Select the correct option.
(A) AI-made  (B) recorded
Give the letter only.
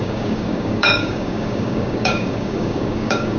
A